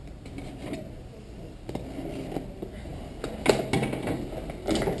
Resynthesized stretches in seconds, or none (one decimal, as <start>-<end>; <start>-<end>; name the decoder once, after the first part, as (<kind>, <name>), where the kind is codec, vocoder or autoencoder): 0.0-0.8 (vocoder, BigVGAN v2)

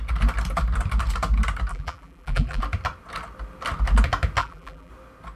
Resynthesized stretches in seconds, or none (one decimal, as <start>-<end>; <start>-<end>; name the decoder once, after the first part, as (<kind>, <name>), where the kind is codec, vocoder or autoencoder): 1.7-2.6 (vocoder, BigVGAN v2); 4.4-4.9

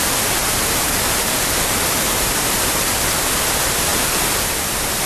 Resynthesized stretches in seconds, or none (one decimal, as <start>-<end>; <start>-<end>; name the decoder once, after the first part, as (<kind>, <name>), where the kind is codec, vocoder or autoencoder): 0.4-3.5 (vocoder, BigVGAN v2)

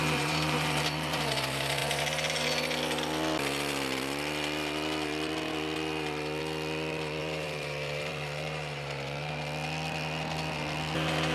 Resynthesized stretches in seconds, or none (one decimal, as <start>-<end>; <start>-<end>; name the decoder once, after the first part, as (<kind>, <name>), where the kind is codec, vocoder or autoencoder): 0.0-1.2 (vocoder, BigVGAN v2); 7.2-9.3

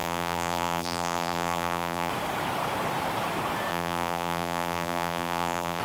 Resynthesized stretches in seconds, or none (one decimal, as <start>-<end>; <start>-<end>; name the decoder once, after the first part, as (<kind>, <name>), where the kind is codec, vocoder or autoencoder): 0.0-2.1 (vocoder, BigVGAN v2); 3.7-5.8

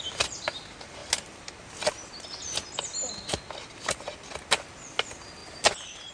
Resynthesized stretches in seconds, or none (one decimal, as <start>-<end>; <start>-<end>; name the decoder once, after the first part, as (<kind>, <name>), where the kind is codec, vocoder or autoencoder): none